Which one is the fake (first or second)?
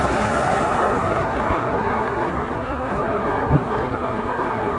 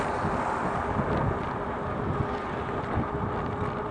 first